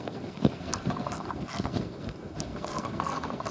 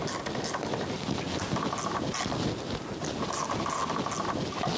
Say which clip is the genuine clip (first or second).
second